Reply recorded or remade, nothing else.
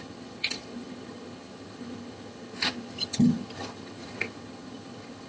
remade